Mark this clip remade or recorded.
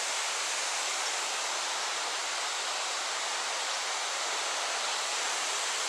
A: recorded